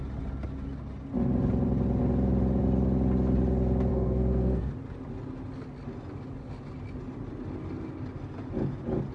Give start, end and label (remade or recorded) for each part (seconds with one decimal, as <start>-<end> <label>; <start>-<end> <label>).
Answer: 0.0-3.9 recorded; 3.9-4.7 remade; 4.7-9.1 recorded